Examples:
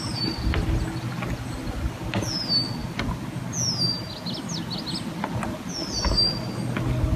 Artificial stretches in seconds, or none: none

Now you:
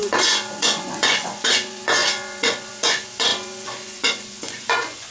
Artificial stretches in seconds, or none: 0.0-5.1 (vocoder, Vocos)

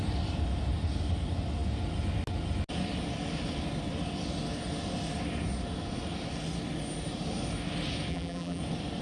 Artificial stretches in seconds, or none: 8.1-8.6 (vocoder, BigVGAN v2)

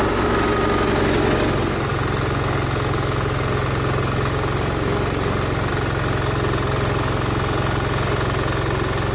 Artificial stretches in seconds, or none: none

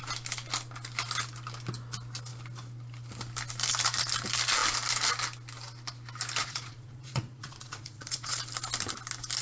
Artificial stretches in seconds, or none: 6.4-8.4 (vocoder, Vocos)

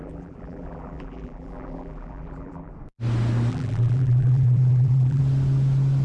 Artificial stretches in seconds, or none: 0.0-2.7 (vocoder, BigVGAN v2); 3.5-5.2

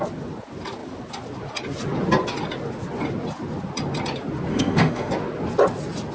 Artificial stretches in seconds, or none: 4.5-5.1 (autoencoder, DAC-VAE)